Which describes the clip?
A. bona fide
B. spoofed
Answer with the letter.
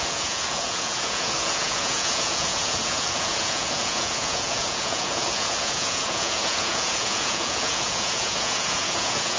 B